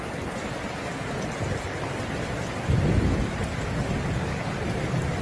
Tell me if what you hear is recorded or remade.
recorded